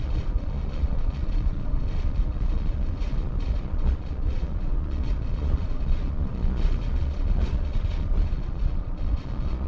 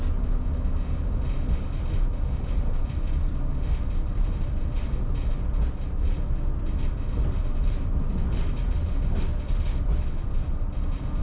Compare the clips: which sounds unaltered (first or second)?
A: second